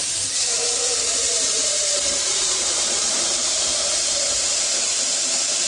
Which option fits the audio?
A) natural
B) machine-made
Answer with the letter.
B